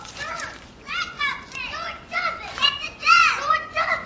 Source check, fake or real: fake